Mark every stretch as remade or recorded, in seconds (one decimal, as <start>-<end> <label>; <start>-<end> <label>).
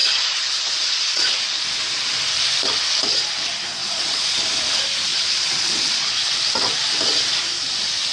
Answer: 0.0-1.6 remade; 1.6-3.8 recorded; 3.8-4.4 remade; 4.4-5.1 recorded; 5.1-6.2 remade; 6.2-8.1 recorded